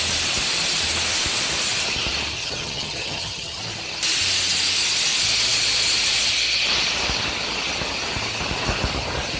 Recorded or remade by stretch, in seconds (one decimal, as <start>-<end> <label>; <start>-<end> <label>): 0.0-2.4 recorded; 2.4-3.6 remade; 3.6-9.4 recorded